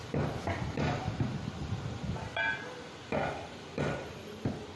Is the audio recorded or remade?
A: recorded